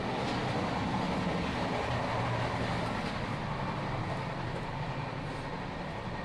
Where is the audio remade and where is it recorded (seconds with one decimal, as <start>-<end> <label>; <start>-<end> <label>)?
0.0-6.2 recorded